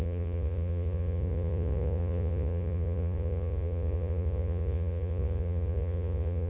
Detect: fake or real fake